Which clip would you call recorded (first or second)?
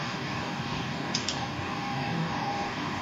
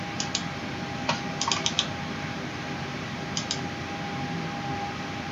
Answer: second